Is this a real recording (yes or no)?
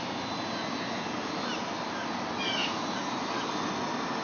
yes